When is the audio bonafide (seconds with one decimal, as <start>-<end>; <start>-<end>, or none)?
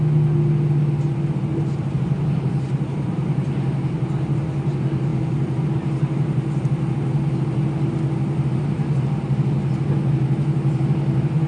0.0-1.5; 3.9-11.5